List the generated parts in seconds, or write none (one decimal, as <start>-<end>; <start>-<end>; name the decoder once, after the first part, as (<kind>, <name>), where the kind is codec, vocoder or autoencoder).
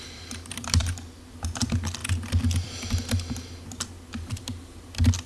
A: none